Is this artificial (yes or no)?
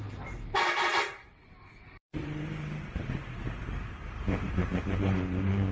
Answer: yes